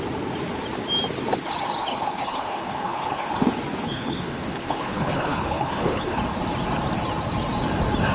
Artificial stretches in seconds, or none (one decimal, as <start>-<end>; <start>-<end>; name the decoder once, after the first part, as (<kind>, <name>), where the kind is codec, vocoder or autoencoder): 1.9-3.3 (codec, HILCodec); 3.8-6.2

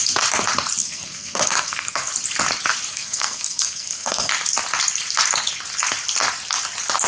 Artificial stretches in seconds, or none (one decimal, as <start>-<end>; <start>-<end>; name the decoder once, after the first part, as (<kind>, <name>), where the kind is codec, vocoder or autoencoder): 0.8-2.1 (codec, SNAC); 2.9-4.3

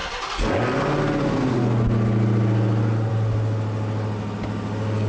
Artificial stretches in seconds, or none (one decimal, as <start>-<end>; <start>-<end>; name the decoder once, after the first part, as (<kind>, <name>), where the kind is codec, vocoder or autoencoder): none

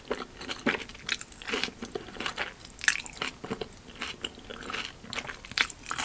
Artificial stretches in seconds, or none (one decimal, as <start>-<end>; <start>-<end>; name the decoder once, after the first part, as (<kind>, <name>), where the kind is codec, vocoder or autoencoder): none

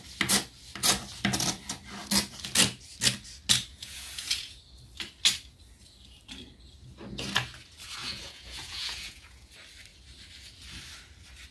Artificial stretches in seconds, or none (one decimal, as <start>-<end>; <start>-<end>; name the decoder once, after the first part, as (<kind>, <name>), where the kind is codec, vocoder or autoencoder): 3.7-4.6 (vocoder, Vocos); 8.0-9.5

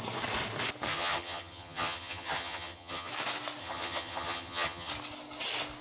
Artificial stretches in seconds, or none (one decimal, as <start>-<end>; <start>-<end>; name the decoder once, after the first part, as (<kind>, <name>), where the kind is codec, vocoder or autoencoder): 0.9-3.1 (vocoder, HiFi-GAN); 3.6-4.9

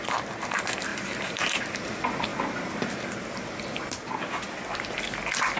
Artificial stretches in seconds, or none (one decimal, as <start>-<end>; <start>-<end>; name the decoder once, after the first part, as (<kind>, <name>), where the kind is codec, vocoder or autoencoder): 0.9-1.9 (vocoder, BigVGAN v2)